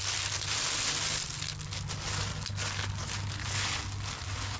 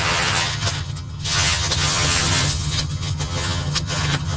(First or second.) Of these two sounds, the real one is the first